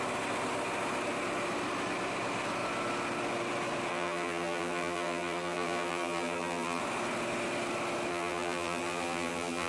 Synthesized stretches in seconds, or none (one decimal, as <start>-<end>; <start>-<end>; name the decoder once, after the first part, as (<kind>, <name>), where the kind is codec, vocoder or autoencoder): 3.9-6.8 (vocoder, BigVGAN v2); 8.1-9.7